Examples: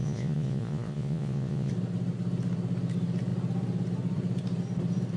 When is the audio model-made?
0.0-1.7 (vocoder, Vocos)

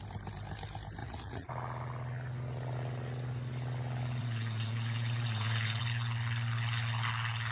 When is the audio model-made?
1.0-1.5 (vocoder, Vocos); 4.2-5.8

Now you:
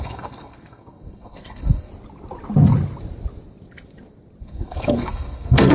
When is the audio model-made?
0.0-1.9 (codec, SNAC); 4.4-5.7